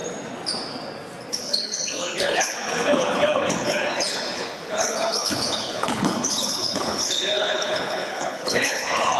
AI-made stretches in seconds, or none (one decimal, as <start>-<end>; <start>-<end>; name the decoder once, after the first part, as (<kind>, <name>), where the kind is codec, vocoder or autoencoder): 1.3-9.2 (codec, HILCodec)